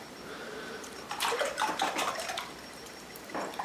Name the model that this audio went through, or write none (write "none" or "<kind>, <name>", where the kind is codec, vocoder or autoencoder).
vocoder, BigVGAN v2